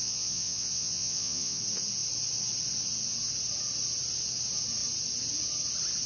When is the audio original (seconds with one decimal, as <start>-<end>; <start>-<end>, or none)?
1.6-6.1